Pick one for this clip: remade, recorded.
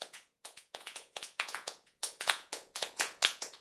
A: remade